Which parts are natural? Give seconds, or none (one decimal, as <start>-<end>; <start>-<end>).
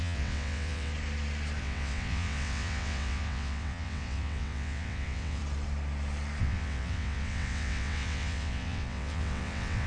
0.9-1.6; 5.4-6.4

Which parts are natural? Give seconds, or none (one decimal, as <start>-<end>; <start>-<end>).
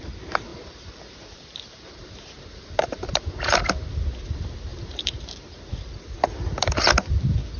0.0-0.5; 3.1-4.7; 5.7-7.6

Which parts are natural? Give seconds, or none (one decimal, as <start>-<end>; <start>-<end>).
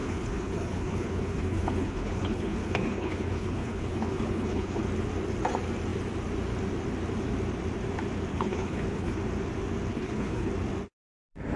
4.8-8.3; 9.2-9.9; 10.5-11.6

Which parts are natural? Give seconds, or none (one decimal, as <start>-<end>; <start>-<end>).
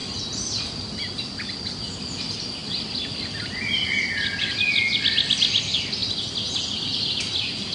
0.0-7.7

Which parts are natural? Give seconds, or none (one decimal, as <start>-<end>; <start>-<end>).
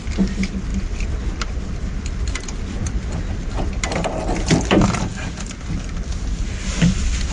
0.0-7.3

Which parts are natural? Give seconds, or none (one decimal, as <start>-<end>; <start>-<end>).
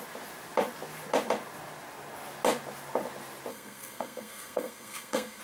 0.0-3.5